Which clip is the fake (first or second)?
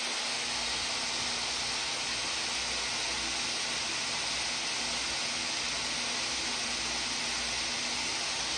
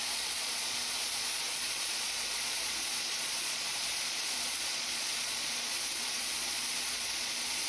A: second